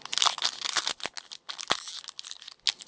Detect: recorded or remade recorded